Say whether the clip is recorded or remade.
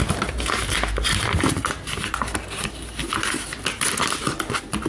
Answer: recorded